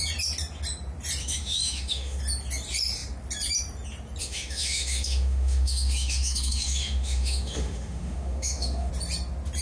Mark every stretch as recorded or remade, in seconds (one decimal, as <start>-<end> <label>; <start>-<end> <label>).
0.0-1.2 recorded; 1.2-2.2 remade; 2.2-4.2 recorded; 4.2-8.9 remade; 8.9-9.6 recorded